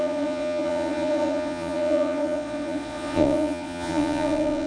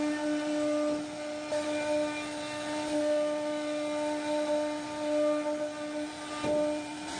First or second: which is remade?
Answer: first